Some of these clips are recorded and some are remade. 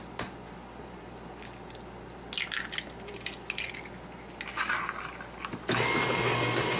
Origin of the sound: recorded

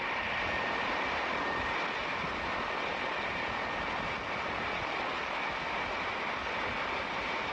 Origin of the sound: recorded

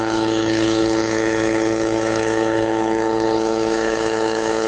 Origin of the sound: remade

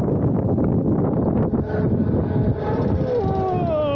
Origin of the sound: recorded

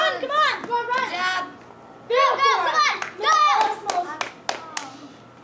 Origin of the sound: recorded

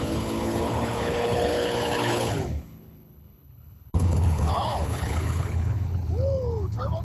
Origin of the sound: remade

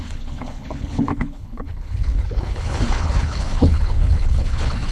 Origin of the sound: remade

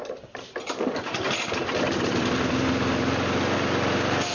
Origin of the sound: recorded